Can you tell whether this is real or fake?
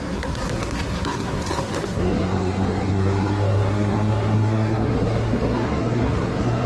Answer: fake